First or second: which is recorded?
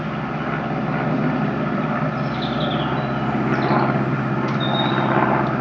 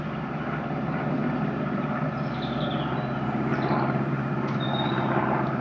first